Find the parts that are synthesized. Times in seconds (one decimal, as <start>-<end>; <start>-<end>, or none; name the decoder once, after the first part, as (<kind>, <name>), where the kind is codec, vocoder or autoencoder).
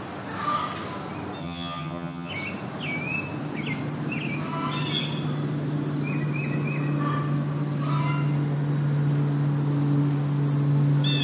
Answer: 1.4-2.3 (vocoder, HiFi-GAN)